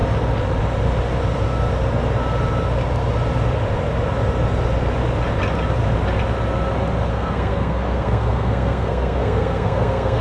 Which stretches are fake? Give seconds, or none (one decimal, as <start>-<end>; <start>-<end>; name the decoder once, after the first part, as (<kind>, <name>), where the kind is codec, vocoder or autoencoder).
7.1-10.2 (codec, SNAC)